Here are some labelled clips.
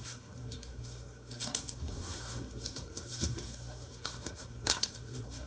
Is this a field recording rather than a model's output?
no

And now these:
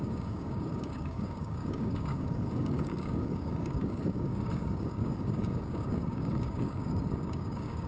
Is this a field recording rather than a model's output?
no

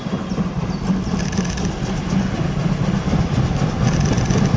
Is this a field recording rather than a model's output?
yes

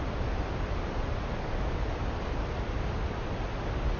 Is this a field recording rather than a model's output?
yes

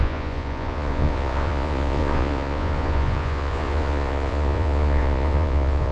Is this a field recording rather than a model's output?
no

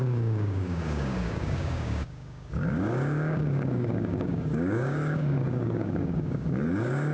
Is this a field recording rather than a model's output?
no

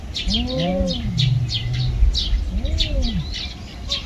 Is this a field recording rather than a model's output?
yes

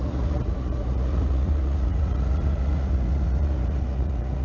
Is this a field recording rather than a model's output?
no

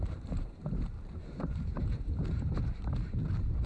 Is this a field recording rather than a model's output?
no